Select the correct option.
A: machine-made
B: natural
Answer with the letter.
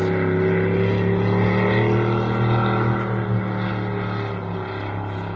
B